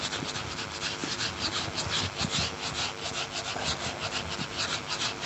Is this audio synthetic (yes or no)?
no